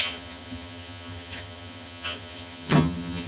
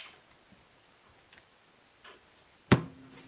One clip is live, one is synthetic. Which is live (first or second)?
second